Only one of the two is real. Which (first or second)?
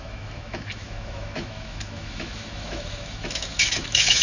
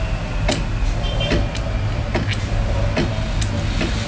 second